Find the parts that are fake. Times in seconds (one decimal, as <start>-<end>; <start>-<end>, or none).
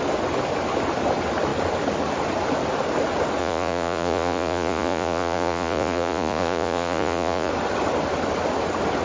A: 3.4-7.5